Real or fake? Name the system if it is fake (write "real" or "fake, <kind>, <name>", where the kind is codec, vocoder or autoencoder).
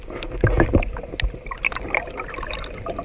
real